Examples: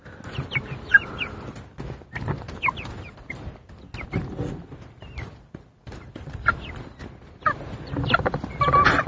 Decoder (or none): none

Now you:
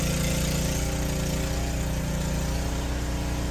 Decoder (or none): none